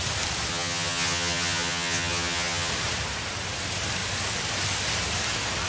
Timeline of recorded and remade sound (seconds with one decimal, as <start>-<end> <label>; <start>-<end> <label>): 0.0-0.5 recorded; 0.5-2.7 remade; 2.7-5.7 recorded